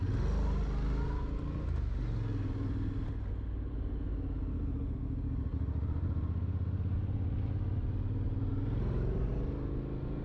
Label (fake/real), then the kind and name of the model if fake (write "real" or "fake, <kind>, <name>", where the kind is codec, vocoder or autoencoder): real